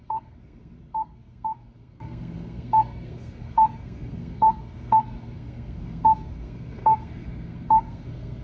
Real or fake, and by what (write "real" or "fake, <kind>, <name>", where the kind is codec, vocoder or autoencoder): fake, codec, SNAC